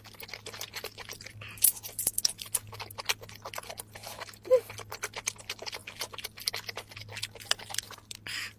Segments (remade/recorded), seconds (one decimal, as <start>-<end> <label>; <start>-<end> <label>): 0.0-5.8 recorded; 5.8-6.5 remade; 6.5-8.6 recorded